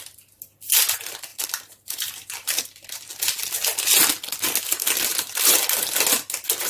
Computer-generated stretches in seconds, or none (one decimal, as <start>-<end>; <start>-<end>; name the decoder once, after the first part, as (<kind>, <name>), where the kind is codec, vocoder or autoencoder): 1.3-2.6 (vocoder, BigVGAN v2)